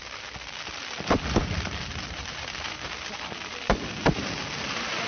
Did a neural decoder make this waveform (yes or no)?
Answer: no